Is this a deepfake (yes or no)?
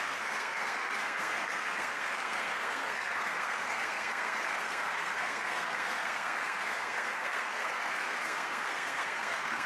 yes